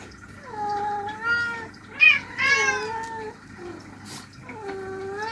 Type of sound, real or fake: real